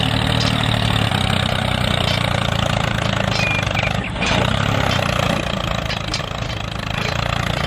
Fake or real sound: real